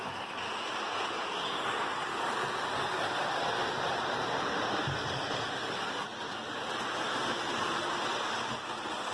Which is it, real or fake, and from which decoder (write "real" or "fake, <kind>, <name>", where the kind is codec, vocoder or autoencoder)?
real